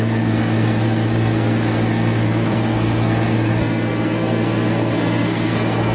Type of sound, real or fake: fake